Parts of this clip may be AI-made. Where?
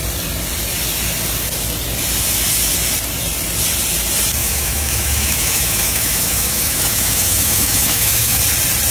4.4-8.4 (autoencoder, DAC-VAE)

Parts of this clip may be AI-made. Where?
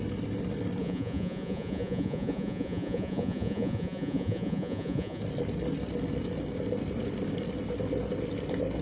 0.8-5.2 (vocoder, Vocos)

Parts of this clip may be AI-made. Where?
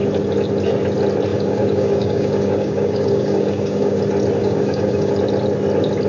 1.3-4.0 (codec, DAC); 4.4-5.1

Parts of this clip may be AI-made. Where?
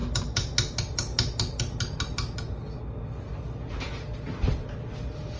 none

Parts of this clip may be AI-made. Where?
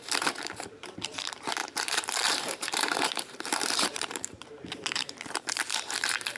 0.0-6.4 (vocoder, BigVGAN v2)